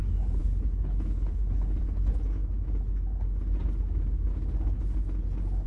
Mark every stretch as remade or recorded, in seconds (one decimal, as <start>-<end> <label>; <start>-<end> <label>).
0.0-0.4 recorded; 0.4-1.8 remade; 1.8-5.7 recorded